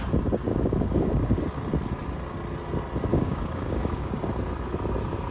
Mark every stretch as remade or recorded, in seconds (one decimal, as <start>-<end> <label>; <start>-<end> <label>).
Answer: 0.0-0.5 recorded; 0.5-1.4 remade; 1.4-3.1 recorded; 3.1-4.1 remade; 4.1-5.3 recorded